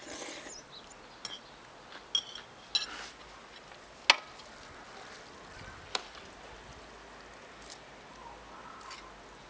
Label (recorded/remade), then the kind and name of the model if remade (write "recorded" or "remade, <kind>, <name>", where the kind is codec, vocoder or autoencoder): recorded